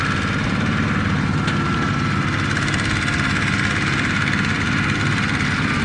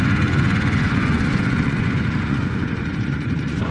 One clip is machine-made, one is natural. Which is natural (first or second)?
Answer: first